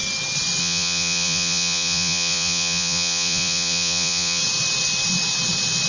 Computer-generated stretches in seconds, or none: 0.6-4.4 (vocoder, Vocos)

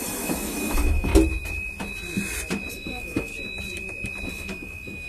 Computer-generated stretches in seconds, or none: 0.0-1.1 (autoencoder, DAC-VAE); 2.7-3.3; 4.3-5.1

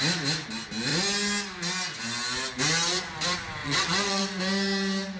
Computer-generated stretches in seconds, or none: 3.6-4.2 (vocoder, WaveNeXt)

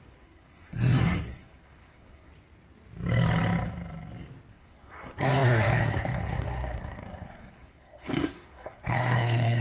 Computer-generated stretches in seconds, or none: 0.0-2.3 (codec, SNAC); 4.5-9.6